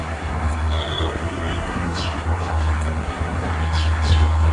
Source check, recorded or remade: remade